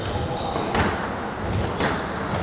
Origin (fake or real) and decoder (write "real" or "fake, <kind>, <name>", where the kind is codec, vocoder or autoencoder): real